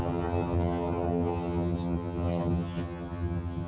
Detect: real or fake fake